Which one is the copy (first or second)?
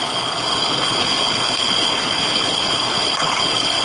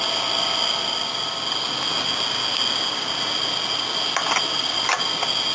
first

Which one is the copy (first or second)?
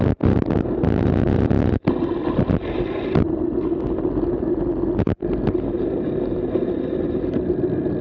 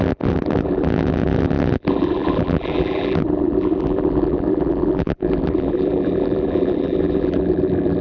second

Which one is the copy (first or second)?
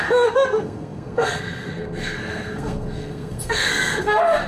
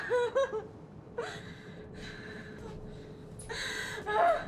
first